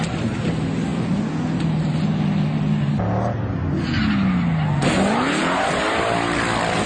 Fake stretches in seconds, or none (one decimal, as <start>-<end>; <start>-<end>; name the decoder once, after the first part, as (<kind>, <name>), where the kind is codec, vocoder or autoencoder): none